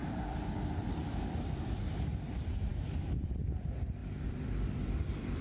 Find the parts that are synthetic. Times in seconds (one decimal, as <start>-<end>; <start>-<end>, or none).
0.0-5.4